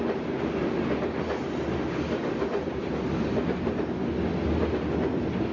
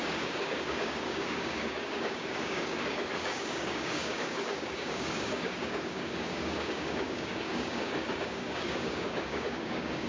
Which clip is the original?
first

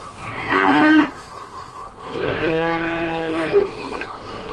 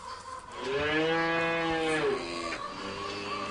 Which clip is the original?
second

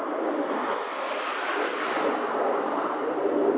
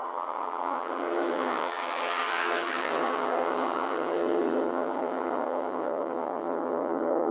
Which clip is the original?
first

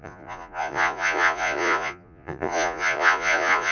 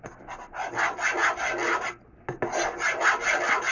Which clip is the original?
second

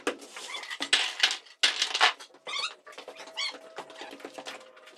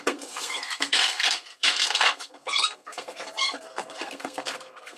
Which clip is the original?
first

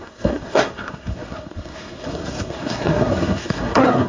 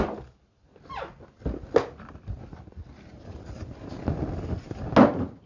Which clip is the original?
second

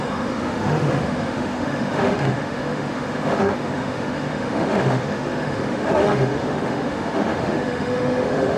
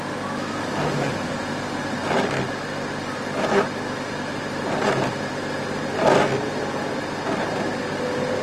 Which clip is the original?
second